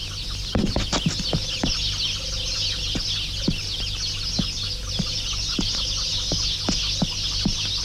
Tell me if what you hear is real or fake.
real